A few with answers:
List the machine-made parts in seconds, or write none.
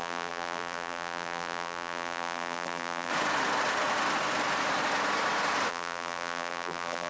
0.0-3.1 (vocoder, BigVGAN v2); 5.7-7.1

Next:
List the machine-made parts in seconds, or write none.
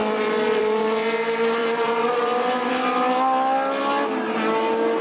0.0-0.8 (vocoder, BigVGAN v2); 1.6-2.7